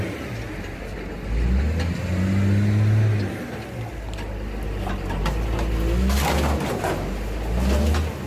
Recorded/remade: recorded